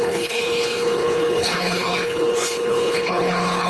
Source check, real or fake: fake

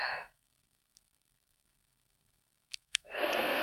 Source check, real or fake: fake